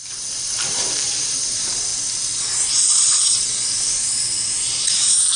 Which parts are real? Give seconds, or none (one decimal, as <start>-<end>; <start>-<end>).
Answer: 0.0-0.7; 1.9-4.8